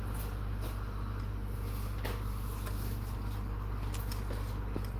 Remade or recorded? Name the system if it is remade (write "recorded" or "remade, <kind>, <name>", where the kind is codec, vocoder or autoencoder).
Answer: recorded